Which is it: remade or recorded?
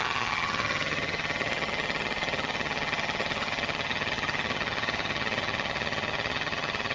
remade